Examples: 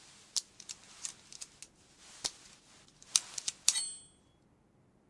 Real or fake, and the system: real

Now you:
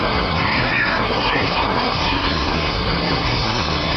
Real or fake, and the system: fake, codec, SNAC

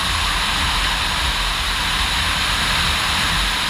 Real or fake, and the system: real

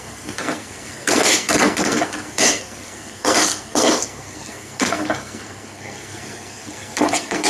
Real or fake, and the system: fake, codec, SNAC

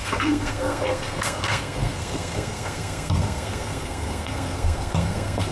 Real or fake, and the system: fake, codec, SNAC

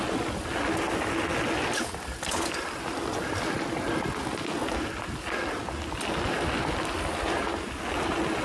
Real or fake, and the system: real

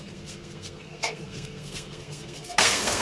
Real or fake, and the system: fake, codec, SNAC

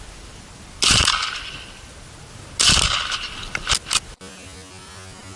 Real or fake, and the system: real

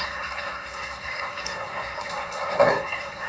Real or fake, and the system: fake, codec, SNAC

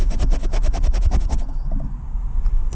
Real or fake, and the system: real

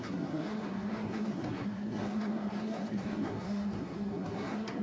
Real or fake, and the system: fake, codec, SNAC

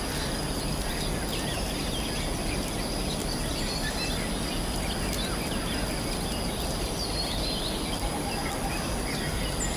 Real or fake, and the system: real